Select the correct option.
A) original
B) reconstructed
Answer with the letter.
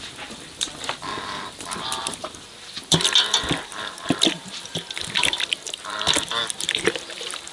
B